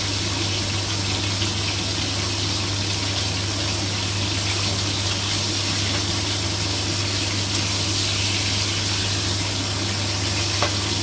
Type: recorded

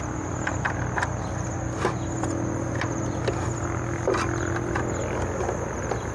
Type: recorded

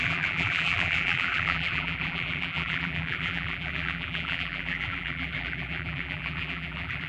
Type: remade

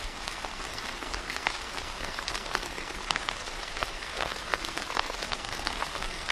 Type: remade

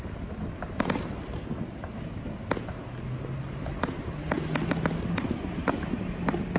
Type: recorded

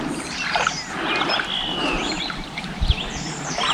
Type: recorded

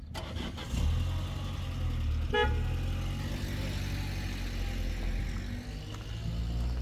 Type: recorded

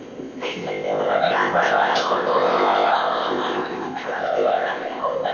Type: remade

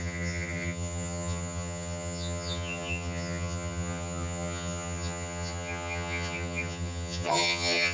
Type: remade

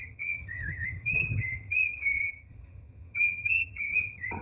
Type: remade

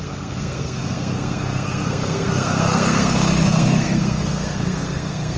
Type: remade